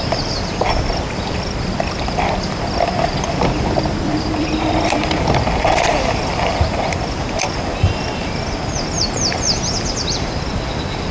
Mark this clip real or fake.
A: fake